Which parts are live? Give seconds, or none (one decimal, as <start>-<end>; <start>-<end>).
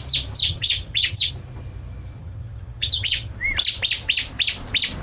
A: 0.0-0.4; 1.3-2.2; 3.3-5.0